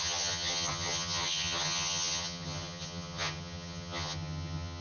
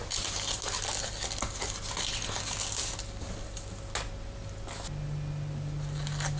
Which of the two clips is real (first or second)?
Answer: second